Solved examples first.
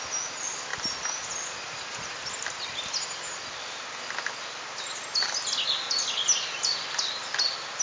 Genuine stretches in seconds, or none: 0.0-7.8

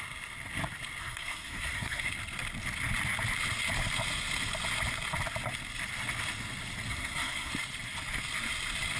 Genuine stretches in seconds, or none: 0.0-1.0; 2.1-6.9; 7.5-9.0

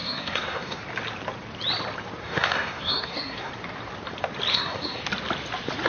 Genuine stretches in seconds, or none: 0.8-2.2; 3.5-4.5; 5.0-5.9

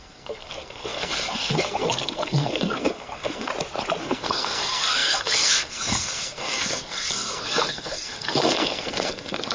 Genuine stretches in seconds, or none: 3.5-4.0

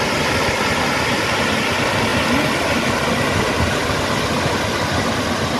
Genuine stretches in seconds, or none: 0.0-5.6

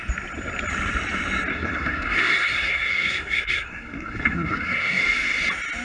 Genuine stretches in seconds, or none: 0.0-1.5; 5.0-5.8

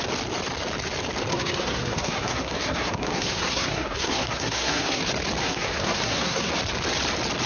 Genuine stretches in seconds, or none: 0.0-1.3; 5.0-5.4; 6.5-7.5

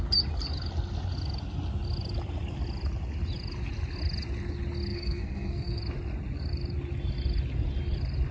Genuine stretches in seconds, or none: 0.0-4.9; 5.8-8.3